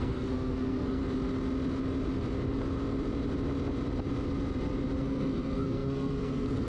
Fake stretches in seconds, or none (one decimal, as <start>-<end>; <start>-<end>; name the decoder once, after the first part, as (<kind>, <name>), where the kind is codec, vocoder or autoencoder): 0.0-1.0 (codec, SNAC); 5.0-6.7

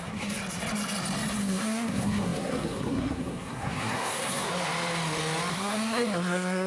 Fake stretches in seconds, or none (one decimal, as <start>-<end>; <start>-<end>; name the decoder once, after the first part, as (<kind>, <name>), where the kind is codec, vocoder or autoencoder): 0.0-0.4 (codec, SNAC); 1.4-4.5; 5.5-6.7

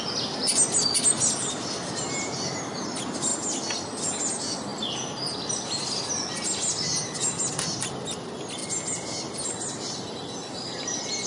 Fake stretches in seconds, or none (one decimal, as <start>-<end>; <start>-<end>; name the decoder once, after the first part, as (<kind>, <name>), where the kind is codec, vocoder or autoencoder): none

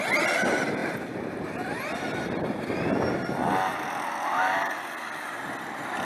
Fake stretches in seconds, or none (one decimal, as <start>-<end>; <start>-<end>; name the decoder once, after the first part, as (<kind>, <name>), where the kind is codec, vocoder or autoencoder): none

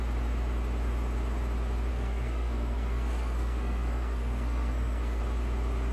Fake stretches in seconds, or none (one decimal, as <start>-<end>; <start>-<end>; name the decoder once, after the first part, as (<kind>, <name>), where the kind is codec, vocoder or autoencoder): 1.9-5.2 (codec, SNAC)

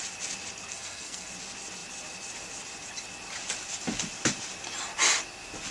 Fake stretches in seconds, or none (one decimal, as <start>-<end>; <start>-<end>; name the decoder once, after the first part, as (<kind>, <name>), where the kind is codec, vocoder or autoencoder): 0.7-1.3 (codec, SNAC)

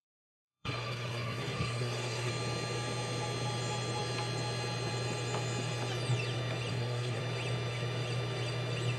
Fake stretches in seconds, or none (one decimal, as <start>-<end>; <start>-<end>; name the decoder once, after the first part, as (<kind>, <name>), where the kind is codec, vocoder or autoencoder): 0.0-2.3 (codec, SNAC); 6.7-7.2

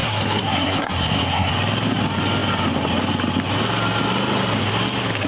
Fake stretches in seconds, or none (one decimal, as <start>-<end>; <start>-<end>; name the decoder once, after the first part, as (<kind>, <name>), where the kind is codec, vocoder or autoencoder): 0.0-1.5 (codec, SNAC)